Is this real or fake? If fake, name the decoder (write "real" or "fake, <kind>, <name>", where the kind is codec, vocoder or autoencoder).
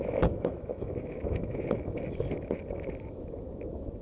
fake, autoencoder, DAC-VAE